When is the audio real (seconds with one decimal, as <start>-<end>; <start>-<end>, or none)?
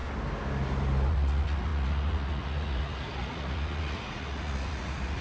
0.0-1.1